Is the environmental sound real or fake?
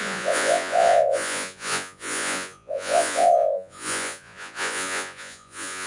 fake